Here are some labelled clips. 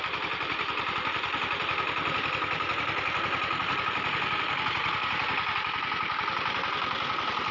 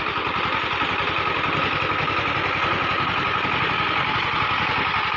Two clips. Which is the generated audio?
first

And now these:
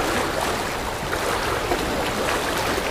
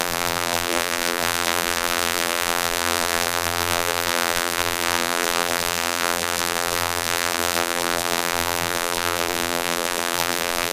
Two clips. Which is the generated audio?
second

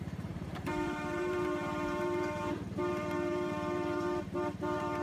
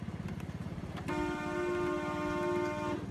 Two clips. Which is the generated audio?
first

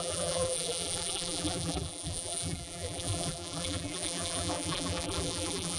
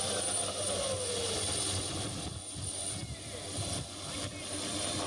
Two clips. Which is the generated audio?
first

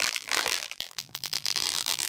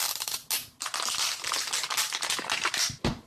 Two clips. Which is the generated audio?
first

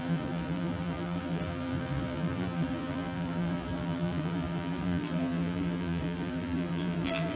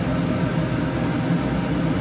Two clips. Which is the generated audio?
first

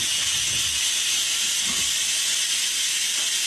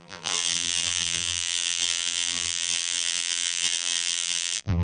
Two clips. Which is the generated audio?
second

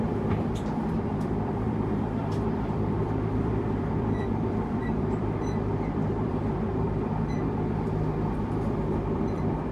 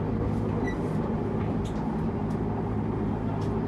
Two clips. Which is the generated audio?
first